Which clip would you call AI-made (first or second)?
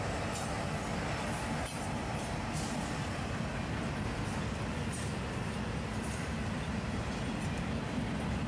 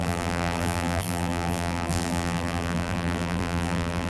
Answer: second